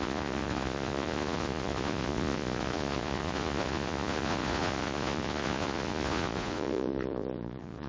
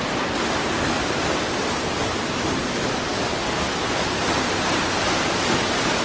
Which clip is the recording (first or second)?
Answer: second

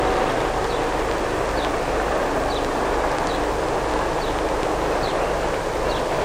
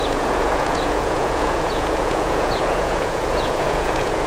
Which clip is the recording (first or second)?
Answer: first